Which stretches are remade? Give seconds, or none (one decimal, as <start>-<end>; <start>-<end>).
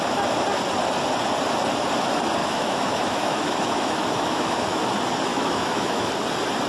2.4-4.8; 5.3-6.1